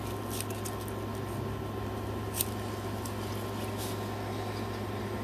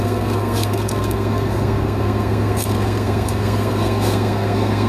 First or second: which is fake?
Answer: second